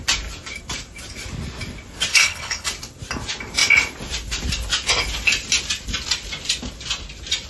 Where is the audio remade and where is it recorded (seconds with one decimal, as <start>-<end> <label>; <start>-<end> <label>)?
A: 0.0-2.1 recorded; 2.1-2.7 remade; 2.7-7.5 recorded